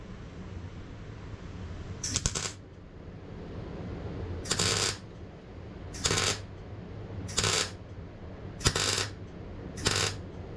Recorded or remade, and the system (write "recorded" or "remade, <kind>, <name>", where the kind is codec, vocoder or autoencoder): recorded